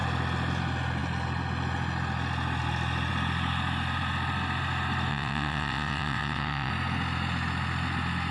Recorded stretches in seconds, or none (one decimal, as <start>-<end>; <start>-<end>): 0.0-5.1; 6.7-8.3

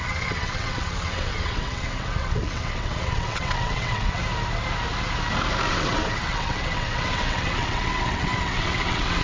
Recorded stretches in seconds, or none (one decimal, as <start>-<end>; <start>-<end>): 4.2-5.7